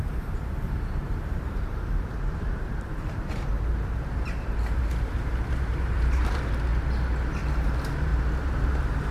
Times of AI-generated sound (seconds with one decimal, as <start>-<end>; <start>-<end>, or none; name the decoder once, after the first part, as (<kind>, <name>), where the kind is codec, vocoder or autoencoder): 0.0-6.7 (vocoder, BigVGAN v2); 7.3-9.1